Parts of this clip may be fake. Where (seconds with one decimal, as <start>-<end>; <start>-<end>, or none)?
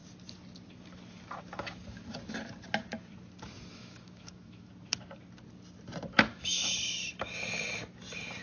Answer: 3.7-4.7; 6.1-6.7